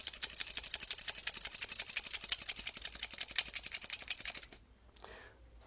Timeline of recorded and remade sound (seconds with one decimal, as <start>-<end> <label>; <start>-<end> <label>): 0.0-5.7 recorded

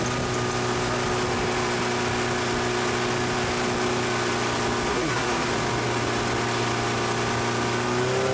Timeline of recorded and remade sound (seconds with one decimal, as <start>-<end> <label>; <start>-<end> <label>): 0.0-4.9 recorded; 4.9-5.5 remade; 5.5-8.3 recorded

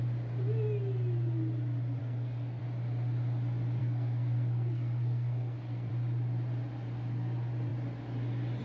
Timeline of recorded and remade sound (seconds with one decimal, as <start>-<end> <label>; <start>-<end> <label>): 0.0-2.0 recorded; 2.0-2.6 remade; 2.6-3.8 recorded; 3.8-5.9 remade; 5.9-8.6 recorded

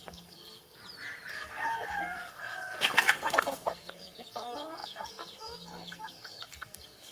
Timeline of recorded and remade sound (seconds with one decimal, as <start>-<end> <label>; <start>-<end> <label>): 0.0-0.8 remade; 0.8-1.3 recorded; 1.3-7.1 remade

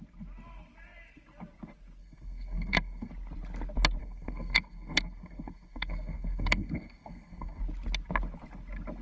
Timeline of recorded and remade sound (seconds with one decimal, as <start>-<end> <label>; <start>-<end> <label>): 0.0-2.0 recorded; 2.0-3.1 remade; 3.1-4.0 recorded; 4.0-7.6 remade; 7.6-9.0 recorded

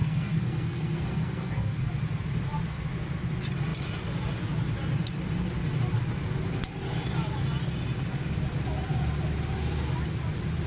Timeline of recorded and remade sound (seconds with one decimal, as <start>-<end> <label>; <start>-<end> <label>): 0.0-1.9 remade; 1.9-10.7 recorded